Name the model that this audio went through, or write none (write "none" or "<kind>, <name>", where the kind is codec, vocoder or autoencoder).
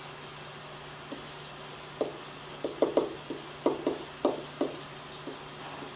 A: none